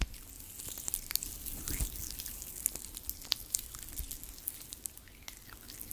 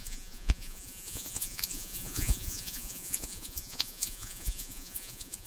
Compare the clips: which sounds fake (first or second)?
second